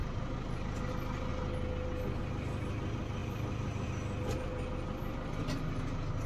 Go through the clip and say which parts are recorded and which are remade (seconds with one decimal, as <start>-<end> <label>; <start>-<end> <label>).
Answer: 0.0-3.2 recorded; 3.2-3.9 remade; 3.9-6.3 recorded